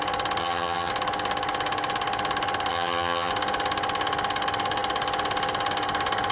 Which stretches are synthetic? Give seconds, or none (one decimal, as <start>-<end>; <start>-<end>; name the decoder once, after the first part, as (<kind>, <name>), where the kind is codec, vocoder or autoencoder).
0.4-0.9 (vocoder, HiFi-GAN); 2.7-3.3

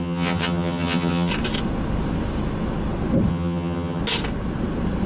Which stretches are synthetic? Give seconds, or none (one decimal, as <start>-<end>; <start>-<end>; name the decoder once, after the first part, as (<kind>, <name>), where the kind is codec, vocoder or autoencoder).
0.0-1.3 (vocoder, HiFi-GAN); 3.3-4.0

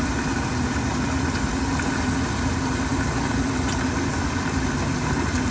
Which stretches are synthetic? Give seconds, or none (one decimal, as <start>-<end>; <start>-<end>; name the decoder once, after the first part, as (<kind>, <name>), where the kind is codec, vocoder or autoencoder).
none

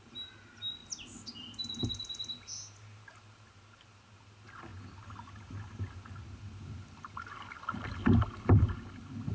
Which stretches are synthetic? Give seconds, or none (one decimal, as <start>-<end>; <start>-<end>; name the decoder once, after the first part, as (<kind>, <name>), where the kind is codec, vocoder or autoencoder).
none

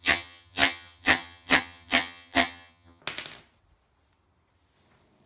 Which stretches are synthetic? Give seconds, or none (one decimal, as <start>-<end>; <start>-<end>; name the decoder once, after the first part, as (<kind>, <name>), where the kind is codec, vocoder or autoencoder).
0.0-3.0 (vocoder, HiFi-GAN)

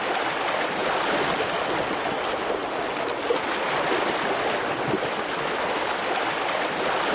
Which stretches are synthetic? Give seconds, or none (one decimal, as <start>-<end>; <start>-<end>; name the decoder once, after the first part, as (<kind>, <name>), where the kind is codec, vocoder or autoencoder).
none